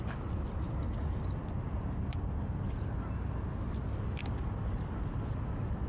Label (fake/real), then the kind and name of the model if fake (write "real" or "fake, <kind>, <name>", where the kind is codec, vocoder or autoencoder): real